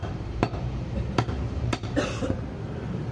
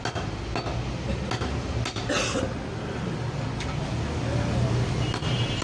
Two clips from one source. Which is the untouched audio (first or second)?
second